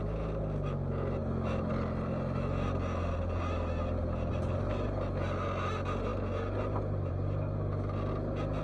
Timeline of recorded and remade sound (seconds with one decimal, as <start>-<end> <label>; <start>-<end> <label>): 0.0-8.6 recorded